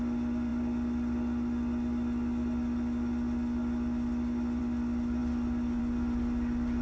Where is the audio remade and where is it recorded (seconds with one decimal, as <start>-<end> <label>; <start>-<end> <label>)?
0.0-6.8 recorded